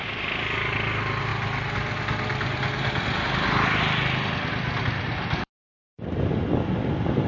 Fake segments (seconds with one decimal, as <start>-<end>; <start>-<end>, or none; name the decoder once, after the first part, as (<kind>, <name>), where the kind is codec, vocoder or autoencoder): none